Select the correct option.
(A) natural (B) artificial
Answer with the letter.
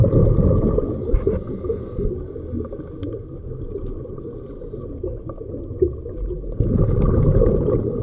A